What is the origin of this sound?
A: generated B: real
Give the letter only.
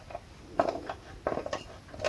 B